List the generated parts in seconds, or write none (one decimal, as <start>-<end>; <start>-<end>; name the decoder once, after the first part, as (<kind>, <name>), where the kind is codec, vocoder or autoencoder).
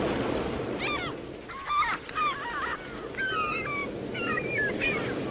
none